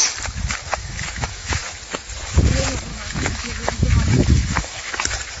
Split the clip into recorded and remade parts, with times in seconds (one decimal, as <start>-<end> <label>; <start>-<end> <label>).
0.0-0.8 recorded; 0.8-1.6 remade; 1.6-2.9 recorded; 2.9-4.9 remade; 4.9-5.4 recorded